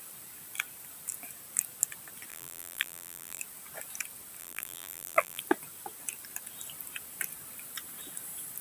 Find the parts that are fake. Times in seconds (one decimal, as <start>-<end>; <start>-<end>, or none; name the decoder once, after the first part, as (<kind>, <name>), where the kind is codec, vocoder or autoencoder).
2.3-3.4 (vocoder, BigVGAN v2); 4.4-5.4